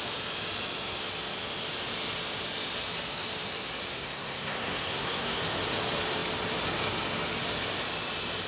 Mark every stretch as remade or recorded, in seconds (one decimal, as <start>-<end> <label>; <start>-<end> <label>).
0.0-3.9 recorded; 3.9-5.4 remade; 5.4-8.5 recorded